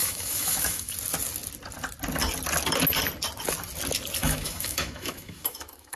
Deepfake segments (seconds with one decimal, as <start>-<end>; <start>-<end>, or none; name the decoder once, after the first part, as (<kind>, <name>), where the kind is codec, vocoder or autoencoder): 0.0-0.9 (autoencoder, DAC-VAE); 4.2-6.0